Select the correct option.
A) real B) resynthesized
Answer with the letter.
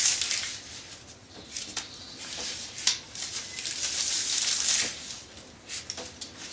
A